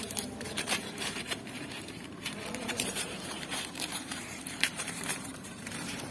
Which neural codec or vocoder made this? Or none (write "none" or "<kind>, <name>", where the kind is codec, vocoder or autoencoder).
vocoder, BigVGAN v2